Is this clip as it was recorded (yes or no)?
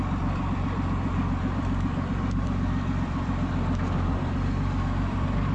no